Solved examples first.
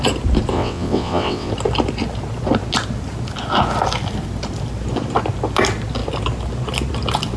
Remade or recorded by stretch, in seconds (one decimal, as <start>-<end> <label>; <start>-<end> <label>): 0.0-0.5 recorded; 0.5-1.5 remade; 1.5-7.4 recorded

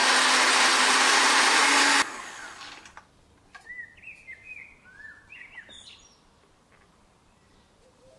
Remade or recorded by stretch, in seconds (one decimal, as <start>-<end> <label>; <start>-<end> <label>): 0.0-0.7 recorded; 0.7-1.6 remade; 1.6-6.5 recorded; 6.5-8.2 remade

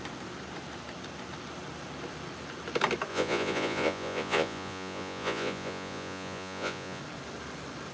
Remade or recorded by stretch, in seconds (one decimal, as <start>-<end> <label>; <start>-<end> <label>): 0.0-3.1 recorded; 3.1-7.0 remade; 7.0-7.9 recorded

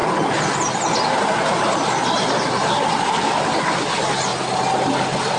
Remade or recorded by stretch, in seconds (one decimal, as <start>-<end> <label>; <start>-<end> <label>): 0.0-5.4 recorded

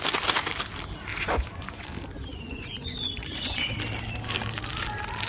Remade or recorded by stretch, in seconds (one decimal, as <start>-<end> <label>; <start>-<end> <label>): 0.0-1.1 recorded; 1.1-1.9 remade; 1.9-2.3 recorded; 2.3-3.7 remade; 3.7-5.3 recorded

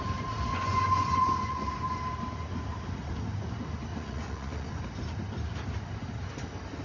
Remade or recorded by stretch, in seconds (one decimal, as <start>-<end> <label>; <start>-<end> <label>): 0.0-0.5 recorded; 0.5-2.0 remade; 2.0-3.9 recorded; 3.9-4.8 remade; 4.8-6.8 recorded